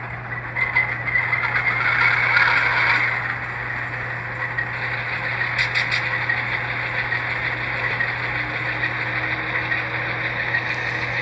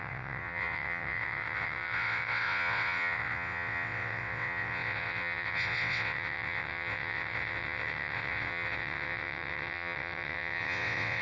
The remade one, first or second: second